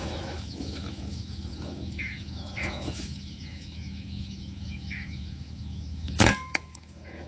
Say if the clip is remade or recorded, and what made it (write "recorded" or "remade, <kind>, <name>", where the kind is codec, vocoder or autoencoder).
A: remade, autoencoder, DAC-VAE